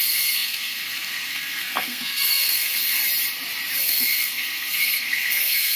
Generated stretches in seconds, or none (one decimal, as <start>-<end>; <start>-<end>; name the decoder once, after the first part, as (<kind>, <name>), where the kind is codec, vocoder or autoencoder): 0.0-3.0 (codec, SNAC); 3.8-5.8